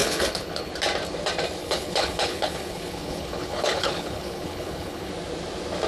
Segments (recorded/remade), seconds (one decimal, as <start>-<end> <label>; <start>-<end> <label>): 0.0-0.7 remade; 0.7-1.6 recorded; 1.6-5.1 remade; 5.1-5.9 recorded